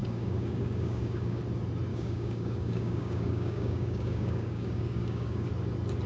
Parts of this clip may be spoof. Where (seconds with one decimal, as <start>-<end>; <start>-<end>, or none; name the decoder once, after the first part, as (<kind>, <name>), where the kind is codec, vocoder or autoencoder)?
0.0-1.4 (codec, DAC); 1.9-5.5